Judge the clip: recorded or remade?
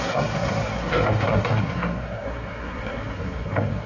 remade